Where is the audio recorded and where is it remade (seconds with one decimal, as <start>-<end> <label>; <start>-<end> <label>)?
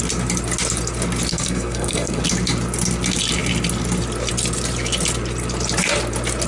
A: 0.0-1.3 recorded; 1.3-2.2 remade; 2.2-6.5 recorded